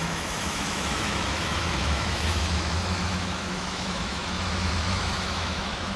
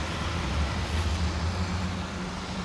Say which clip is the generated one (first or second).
first